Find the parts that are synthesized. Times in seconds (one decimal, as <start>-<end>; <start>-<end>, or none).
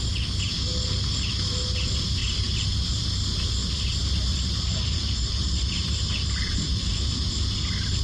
2.2-3.1; 3.6-7.3